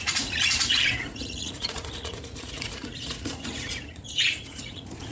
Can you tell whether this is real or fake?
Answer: fake